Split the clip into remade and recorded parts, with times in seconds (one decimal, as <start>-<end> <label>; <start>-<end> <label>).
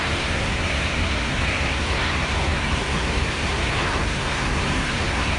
0.0-5.4 remade